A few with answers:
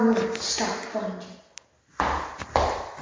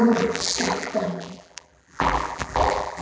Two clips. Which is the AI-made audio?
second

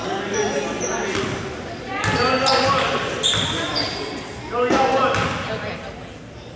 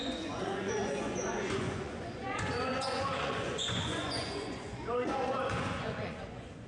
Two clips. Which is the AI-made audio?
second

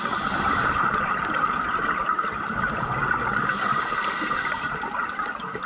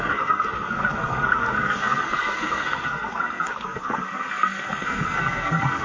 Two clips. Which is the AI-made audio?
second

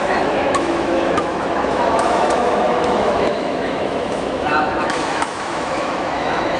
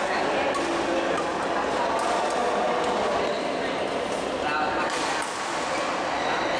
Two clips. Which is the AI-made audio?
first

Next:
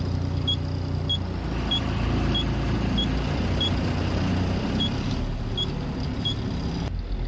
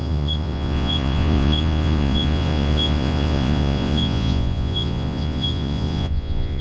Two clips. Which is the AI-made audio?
second